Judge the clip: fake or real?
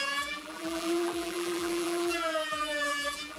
fake